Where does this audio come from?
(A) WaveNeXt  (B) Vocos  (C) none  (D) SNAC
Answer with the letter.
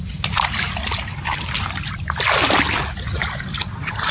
C